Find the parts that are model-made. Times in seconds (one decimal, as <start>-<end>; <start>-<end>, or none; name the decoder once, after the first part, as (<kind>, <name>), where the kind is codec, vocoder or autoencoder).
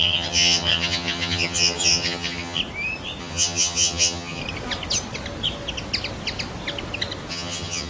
0.0-2.6 (vocoder, HiFi-GAN); 3.2-4.4; 7.3-7.9